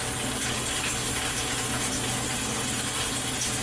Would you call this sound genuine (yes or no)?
yes